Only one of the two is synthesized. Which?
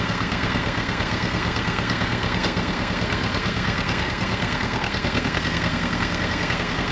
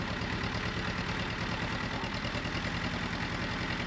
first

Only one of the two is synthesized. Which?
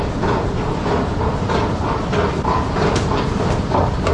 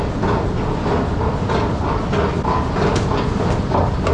first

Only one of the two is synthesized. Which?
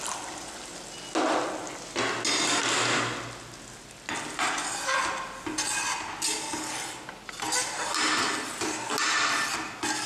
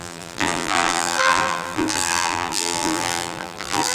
second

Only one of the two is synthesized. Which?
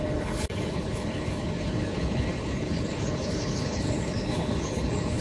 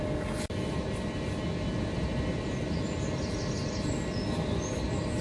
first